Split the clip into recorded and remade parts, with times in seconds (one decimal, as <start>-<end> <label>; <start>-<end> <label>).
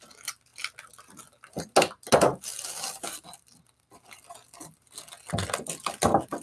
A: 0.0-6.4 recorded